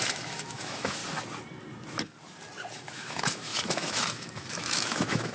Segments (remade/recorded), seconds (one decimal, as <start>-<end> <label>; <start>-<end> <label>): 0.0-1.0 remade; 1.0-2.7 recorded; 2.7-5.3 remade